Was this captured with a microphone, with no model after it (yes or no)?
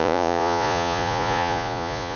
no